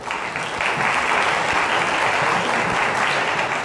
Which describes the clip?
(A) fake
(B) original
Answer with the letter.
B